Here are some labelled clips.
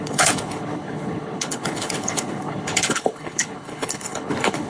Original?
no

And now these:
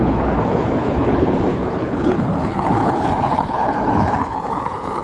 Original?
no